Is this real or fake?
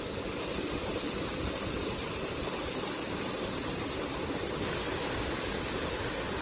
real